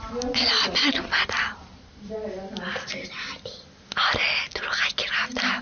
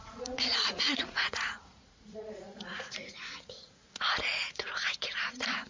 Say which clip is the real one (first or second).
first